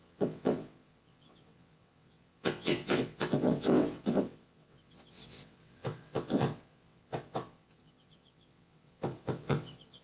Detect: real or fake fake